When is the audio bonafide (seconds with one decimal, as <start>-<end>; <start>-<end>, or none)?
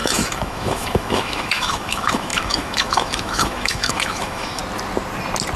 4.6-5.6